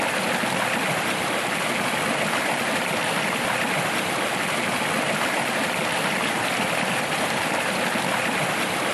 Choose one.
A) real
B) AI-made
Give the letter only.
A